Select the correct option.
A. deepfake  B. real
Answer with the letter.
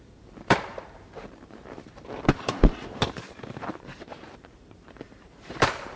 A